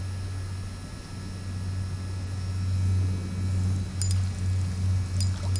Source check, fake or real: real